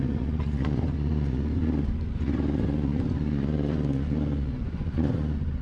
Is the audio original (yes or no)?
no